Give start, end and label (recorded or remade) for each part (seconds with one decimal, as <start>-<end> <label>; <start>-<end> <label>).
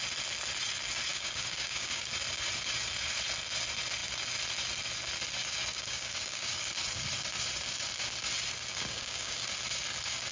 0.0-1.1 recorded; 1.1-2.1 remade; 2.1-5.7 recorded; 5.7-6.7 remade; 6.7-8.7 recorded; 8.7-9.5 remade; 9.5-10.3 recorded